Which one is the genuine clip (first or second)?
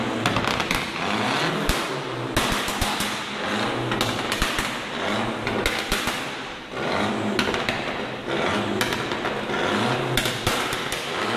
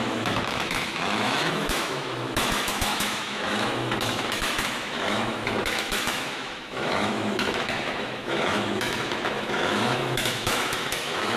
first